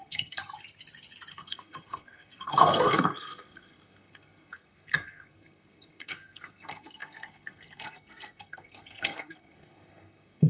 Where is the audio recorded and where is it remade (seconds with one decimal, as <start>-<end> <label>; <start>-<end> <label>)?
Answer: 0.0-0.4 remade; 0.4-1.3 recorded; 1.3-10.5 remade